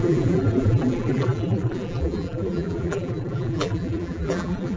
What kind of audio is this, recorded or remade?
remade